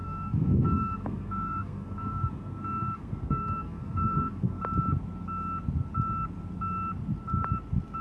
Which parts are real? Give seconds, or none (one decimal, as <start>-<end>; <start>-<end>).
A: 4.6-8.0